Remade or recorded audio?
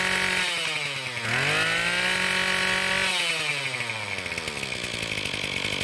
recorded